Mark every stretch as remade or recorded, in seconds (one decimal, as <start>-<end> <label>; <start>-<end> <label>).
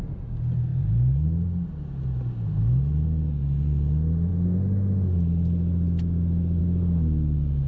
0.0-7.7 recorded